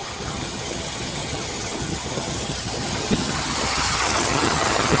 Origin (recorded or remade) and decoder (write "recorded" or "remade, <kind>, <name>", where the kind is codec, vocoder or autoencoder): remade, vocoder, HiFi-GAN